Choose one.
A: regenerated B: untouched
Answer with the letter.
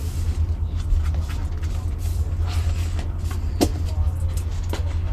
B